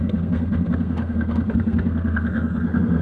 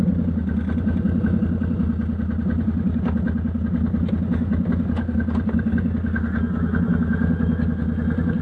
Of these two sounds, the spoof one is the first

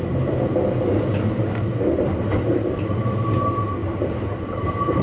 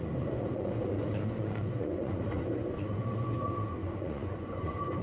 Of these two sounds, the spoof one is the second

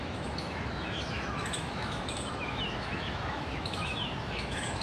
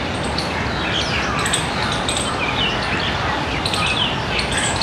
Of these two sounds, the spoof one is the first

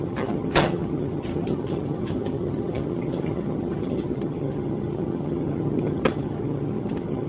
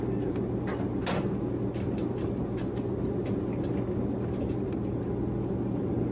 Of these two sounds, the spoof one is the first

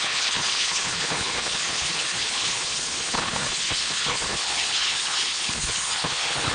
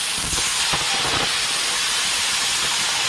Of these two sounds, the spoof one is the first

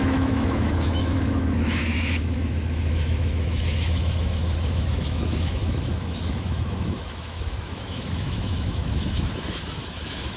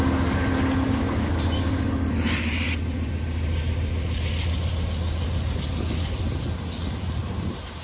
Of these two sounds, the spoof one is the first